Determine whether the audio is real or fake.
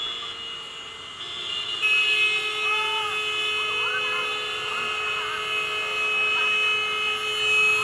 real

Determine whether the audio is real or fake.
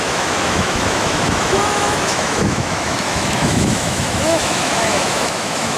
fake